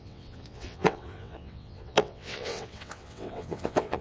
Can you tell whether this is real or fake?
fake